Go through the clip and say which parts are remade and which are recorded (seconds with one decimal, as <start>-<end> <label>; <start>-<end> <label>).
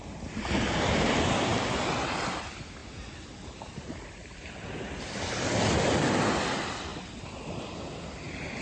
0.0-8.6 recorded